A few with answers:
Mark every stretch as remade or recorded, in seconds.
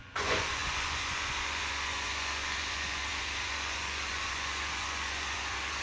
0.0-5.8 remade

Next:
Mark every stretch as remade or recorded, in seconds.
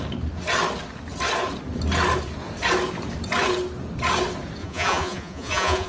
0.0-4.6 recorded; 4.6-5.9 remade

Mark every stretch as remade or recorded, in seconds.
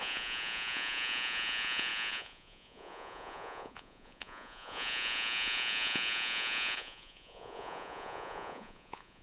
0.0-9.2 remade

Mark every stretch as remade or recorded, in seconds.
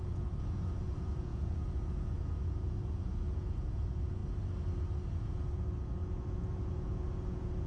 0.0-4.2 remade; 4.2-5.1 recorded; 5.1-7.7 remade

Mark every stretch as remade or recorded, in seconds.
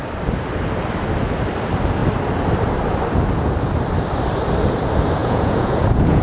0.0-5.2 recorded; 5.2-6.2 remade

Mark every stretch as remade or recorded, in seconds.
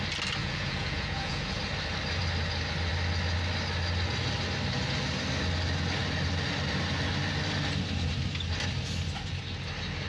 0.0-0.4 recorded; 0.4-1.6 remade; 1.6-10.1 recorded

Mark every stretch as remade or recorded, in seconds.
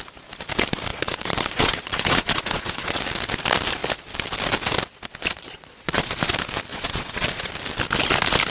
0.0-0.9 recorded; 0.9-3.0 remade; 3.0-5.3 recorded; 5.3-6.3 remade; 6.3-6.7 recorded; 6.7-7.5 remade; 7.5-8.5 recorded